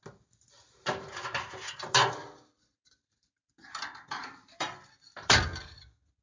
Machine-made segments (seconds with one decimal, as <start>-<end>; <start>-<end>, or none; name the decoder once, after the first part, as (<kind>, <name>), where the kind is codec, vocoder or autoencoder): 2.2-5.4 (vocoder, BigVGAN v2)